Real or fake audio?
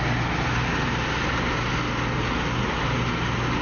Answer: real